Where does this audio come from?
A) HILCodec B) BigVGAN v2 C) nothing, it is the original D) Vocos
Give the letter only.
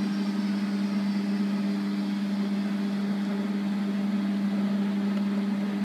C